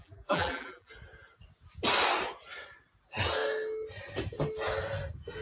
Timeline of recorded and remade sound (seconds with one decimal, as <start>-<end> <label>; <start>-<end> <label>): 0.0-0.9 remade; 0.9-5.4 recorded